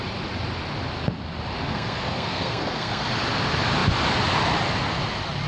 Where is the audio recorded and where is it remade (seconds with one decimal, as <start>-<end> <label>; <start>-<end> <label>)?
0.0-1.6 recorded; 1.6-3.1 remade; 3.1-5.5 recorded